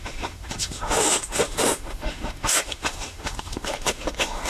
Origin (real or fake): fake